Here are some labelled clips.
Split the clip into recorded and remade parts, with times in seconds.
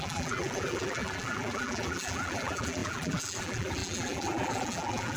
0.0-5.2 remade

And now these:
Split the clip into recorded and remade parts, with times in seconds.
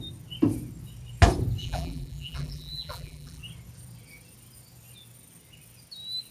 0.0-1.6 recorded; 1.6-3.4 remade; 3.4-6.3 recorded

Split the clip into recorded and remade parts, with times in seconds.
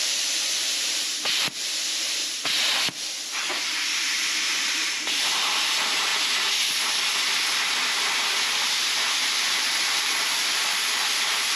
0.0-2.2 remade; 2.2-3.5 recorded; 3.5-6.1 remade; 6.1-9.4 recorded; 9.4-11.6 remade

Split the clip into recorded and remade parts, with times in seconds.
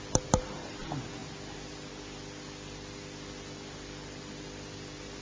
0.0-5.2 recorded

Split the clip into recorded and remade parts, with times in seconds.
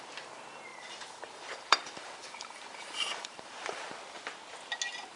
0.0-0.7 recorded; 0.7-3.8 remade; 3.8-5.2 recorded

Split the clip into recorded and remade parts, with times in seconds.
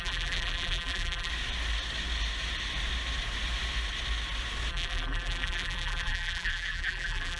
0.0-1.3 remade; 1.3-4.7 recorded; 4.7-7.4 remade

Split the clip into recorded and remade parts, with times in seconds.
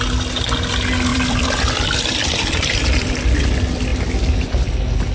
0.0-1.1 recorded; 1.1-3.1 remade; 3.1-5.1 recorded